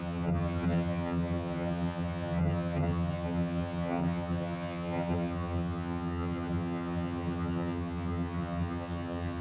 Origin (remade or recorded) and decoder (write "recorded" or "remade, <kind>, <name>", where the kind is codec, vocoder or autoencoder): remade, vocoder, HiFi-GAN